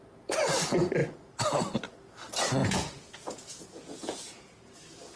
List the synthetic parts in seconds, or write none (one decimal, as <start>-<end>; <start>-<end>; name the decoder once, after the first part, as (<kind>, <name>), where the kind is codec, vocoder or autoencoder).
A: 2.6-4.6 (vocoder, Vocos)